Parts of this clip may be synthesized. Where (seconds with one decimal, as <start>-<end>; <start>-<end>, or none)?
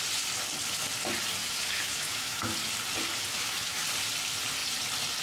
1.4-2.5; 3.3-3.8